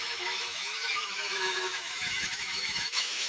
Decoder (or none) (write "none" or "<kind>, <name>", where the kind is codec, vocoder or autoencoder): autoencoder, DAC-VAE